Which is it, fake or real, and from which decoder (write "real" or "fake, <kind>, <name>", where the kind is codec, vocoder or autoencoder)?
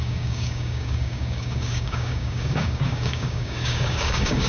fake, codec, DAC